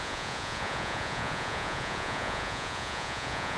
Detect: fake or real fake